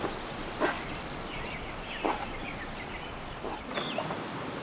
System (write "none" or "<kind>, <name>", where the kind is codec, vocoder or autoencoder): none